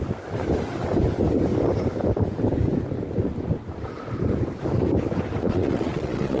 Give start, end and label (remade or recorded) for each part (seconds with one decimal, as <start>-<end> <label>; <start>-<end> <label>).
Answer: 0.0-5.4 recorded; 5.4-6.4 remade